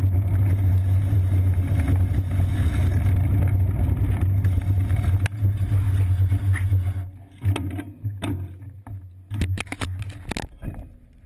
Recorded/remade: recorded